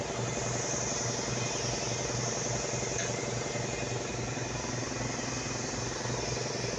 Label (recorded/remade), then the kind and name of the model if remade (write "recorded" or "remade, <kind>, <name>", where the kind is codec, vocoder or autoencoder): recorded